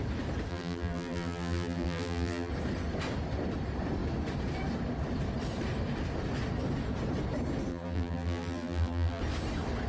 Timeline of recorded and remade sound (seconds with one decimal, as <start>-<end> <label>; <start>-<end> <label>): 0.0-0.5 recorded; 0.5-2.5 remade; 2.5-7.7 recorded; 7.7-9.2 remade; 9.2-9.9 recorded